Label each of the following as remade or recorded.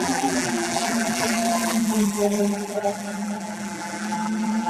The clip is remade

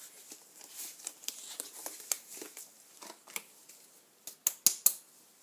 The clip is recorded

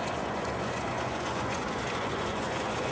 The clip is remade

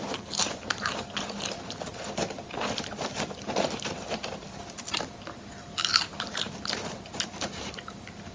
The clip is remade